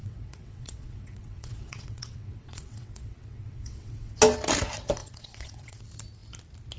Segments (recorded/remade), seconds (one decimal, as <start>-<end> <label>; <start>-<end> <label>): 0.0-4.1 remade; 4.1-5.0 recorded; 5.0-5.8 remade; 5.8-6.8 recorded